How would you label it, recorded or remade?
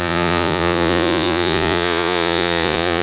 remade